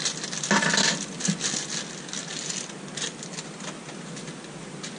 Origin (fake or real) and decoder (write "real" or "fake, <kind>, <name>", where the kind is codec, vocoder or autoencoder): real